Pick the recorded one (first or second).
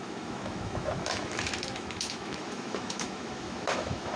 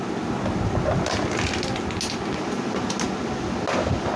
second